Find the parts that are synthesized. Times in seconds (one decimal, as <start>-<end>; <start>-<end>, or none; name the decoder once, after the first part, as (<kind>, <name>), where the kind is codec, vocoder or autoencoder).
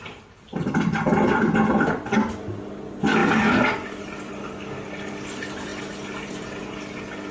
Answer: none